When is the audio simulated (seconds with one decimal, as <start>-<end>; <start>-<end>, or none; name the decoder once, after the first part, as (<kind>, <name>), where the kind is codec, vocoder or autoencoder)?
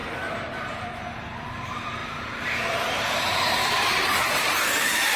0.0-5.2 (vocoder, BigVGAN v2)